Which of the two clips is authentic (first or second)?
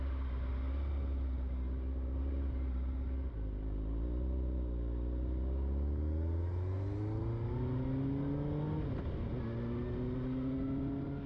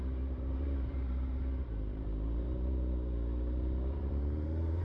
first